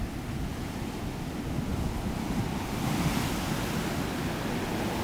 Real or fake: real